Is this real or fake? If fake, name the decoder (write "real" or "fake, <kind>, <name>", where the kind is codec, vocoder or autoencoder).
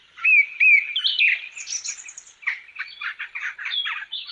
real